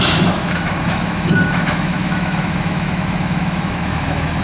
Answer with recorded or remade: remade